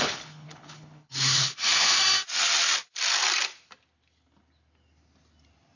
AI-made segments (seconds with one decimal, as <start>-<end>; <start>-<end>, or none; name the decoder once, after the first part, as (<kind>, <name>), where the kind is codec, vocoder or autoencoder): 0.0-2.0 (codec, HILCodec)